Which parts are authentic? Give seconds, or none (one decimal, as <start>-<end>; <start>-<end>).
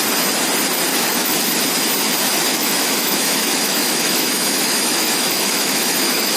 0.0-0.9; 1.4-2.5